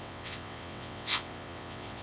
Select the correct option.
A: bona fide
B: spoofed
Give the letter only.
B